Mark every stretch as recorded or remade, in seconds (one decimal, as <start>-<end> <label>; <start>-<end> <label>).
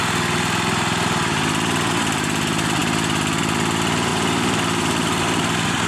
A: 0.0-4.1 recorded; 4.1-5.9 remade